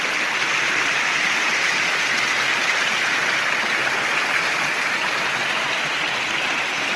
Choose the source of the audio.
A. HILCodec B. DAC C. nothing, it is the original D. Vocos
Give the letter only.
C